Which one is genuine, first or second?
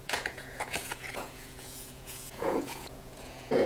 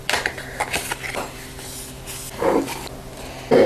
second